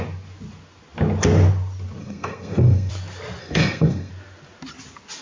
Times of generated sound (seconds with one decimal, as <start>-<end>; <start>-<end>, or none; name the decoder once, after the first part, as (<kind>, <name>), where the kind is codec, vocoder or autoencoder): 2.0-2.9 (codec, SNAC); 3.4-4.1